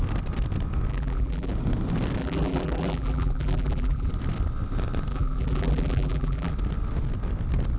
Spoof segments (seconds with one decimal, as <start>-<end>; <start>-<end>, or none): 0.9-1.5; 2.2-4.1; 5.1-6.5